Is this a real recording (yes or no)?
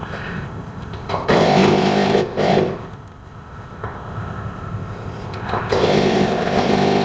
no